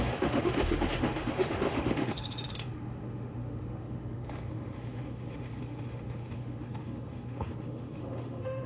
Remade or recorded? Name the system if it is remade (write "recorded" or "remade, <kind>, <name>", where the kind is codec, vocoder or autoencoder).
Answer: remade, autoencoder, DAC-VAE